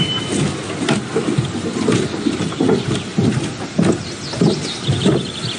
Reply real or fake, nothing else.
real